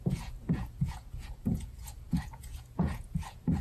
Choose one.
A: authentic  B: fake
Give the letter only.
B